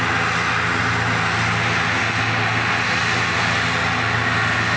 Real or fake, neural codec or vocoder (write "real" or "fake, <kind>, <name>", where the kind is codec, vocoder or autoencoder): real